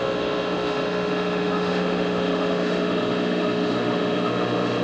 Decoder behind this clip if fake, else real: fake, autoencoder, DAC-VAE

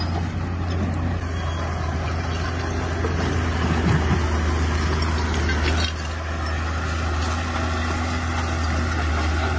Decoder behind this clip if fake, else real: real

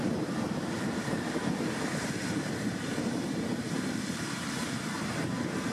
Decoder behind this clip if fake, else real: fake, vocoder, BigVGAN v2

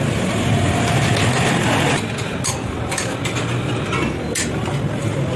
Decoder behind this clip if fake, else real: real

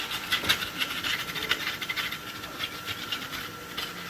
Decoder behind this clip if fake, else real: real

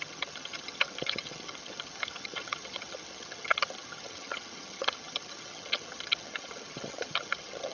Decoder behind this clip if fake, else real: fake, vocoder, HiFi-GAN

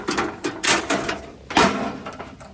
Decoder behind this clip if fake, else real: real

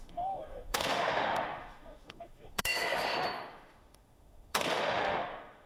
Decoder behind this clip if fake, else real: fake, autoencoder, DAC-VAE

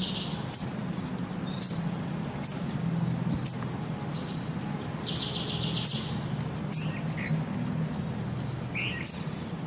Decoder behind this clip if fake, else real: real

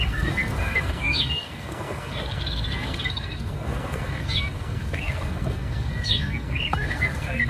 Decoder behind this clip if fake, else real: fake, codec, SNAC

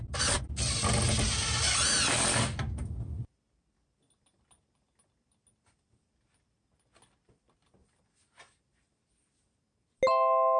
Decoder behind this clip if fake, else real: real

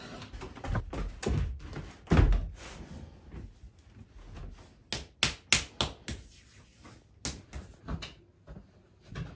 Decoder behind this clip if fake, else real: real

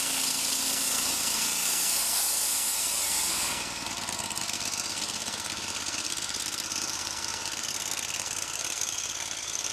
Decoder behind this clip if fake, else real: fake, codec, SNAC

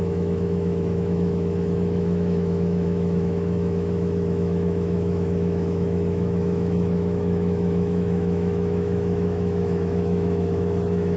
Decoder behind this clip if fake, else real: fake, autoencoder, DAC-VAE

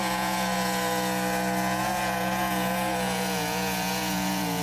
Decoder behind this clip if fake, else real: fake, vocoder, Vocos